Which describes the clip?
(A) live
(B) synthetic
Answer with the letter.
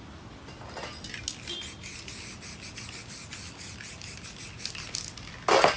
A